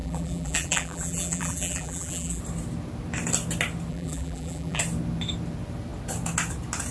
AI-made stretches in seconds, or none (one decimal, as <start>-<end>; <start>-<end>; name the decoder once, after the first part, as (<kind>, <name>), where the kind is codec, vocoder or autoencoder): 0.0-2.4 (vocoder, BigVGAN v2); 3.9-4.8